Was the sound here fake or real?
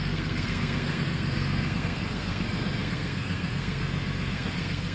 fake